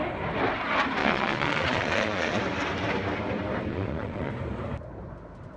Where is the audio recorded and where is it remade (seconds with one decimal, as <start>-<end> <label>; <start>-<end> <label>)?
0.0-1.0 recorded; 1.0-2.4 remade; 2.4-3.7 recorded; 3.7-4.3 remade; 4.3-5.6 recorded